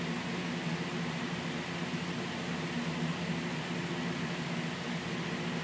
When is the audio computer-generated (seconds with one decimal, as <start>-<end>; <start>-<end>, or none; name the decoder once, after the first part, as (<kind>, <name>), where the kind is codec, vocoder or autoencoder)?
none